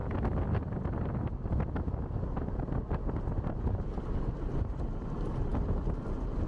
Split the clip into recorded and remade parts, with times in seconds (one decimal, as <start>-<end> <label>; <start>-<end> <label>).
0.0-6.5 recorded